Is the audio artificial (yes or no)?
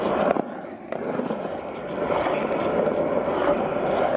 no